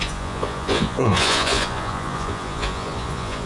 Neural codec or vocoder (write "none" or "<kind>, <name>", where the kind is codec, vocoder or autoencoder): vocoder, Vocos